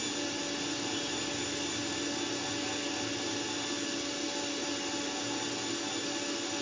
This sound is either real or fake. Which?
real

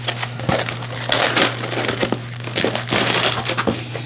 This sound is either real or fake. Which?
real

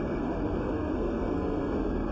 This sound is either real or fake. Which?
fake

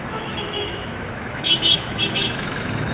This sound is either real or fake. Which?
fake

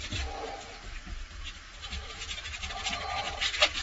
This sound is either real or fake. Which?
real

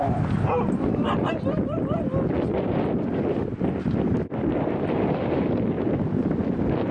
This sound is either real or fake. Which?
fake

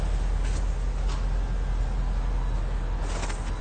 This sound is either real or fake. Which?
real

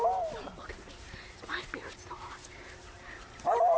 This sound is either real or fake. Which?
real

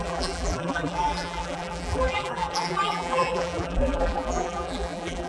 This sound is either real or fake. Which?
fake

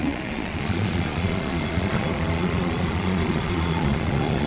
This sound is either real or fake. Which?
fake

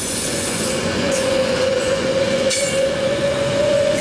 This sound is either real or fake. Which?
fake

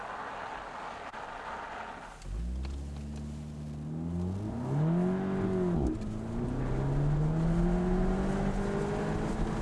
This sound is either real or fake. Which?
real